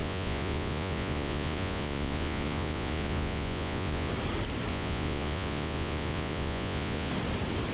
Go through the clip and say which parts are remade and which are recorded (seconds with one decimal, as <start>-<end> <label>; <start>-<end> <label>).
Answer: 0.0-4.1 remade; 4.1-4.7 recorded; 4.7-7.1 remade; 7.1-7.7 recorded